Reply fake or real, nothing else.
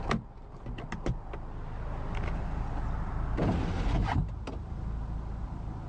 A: real